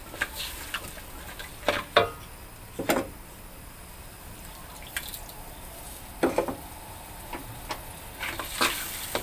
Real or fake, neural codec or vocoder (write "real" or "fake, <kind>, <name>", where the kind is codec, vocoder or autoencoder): real